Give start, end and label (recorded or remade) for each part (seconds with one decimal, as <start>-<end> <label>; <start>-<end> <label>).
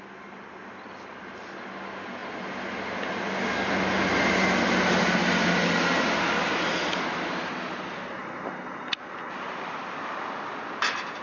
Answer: 0.0-11.2 recorded